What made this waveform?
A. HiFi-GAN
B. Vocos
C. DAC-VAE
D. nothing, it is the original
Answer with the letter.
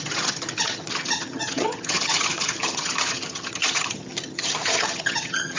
A